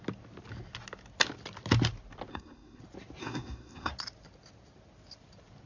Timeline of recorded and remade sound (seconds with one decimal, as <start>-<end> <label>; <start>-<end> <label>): 0.0-2.3 recorded; 2.3-2.8 remade; 2.8-3.2 recorded; 3.2-3.9 remade; 3.9-5.7 recorded